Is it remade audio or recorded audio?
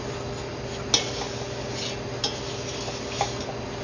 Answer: recorded